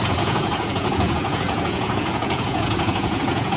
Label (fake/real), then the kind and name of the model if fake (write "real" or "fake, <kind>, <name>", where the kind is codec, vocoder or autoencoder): fake, vocoder, Vocos